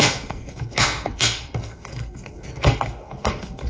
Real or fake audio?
fake